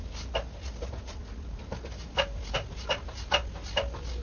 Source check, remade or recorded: recorded